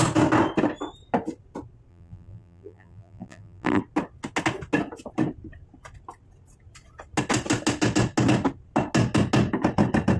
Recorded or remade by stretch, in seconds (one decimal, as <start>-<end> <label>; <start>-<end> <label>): 0.0-1.9 recorded; 1.9-3.8 remade; 3.8-10.2 recorded